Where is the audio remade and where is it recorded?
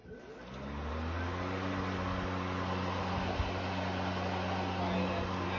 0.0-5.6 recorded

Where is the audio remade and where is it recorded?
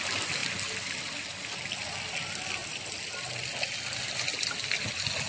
0.0-5.3 recorded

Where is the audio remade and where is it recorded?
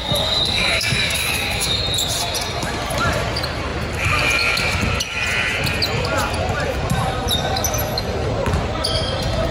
0.0-1.8 remade; 1.8-9.5 recorded